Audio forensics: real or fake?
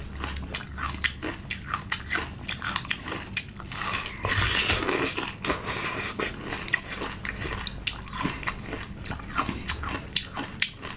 real